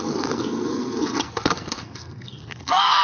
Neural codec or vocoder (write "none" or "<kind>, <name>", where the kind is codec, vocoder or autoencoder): codec, SNAC